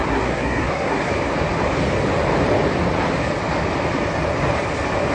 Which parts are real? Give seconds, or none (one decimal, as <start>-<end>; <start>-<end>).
1.1-5.1